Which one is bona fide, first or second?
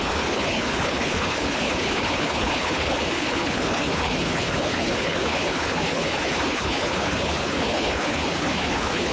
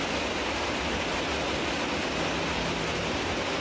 second